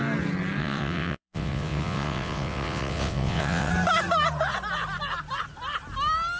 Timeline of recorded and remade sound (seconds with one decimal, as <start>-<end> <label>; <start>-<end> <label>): 0.0-0.6 recorded; 0.6-3.7 remade; 3.7-6.4 recorded